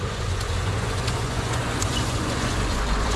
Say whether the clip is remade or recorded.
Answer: remade